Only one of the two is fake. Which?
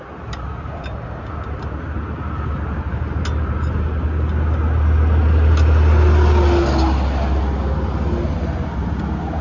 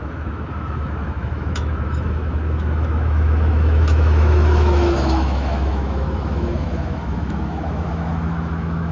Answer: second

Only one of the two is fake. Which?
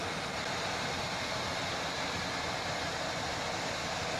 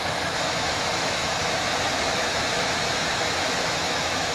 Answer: second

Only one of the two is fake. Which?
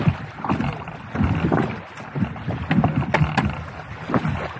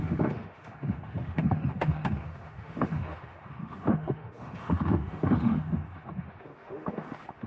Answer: second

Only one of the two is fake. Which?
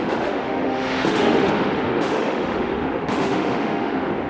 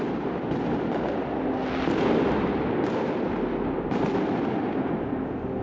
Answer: first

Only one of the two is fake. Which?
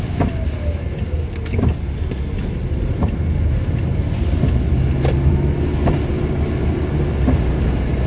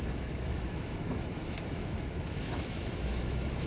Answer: second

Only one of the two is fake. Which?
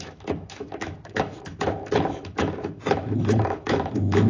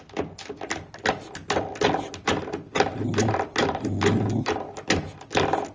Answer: first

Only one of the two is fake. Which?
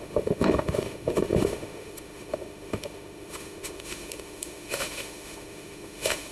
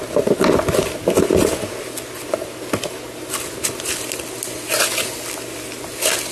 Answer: first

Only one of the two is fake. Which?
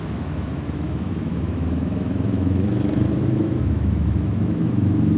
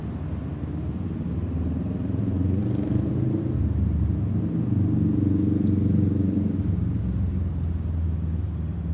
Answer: first